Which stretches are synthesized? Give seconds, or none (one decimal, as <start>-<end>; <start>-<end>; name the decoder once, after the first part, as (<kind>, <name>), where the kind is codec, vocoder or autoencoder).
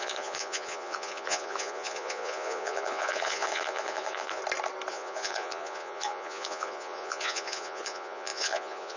0.0-4.4 (vocoder, Vocos); 4.9-9.0